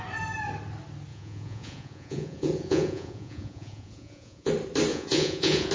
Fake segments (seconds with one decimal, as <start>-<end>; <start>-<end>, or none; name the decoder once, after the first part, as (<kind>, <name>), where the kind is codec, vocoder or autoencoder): 1.1-4.5 (vocoder, Vocos); 4.9-5.7